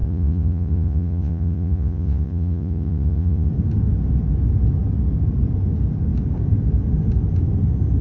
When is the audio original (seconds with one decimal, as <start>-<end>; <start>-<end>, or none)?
3.5-8.0